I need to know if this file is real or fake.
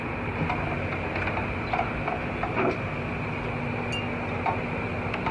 real